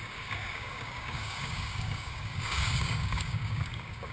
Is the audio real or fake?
fake